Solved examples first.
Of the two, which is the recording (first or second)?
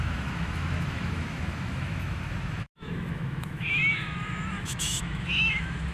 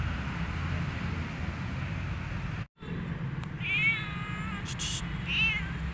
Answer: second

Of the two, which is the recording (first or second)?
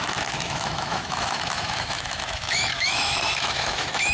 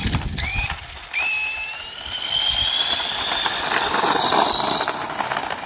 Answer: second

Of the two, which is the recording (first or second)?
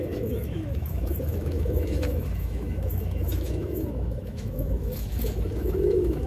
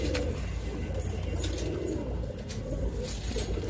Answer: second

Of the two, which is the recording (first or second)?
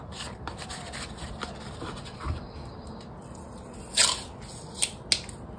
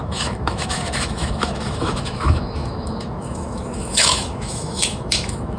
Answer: first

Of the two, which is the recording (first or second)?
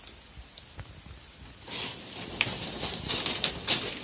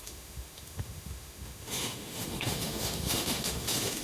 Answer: first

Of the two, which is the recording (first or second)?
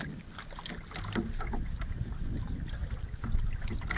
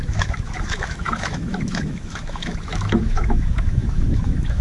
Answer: first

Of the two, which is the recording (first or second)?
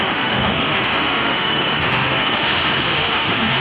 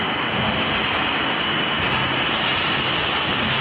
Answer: second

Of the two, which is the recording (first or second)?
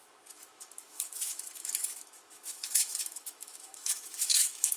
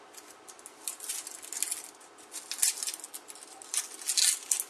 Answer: second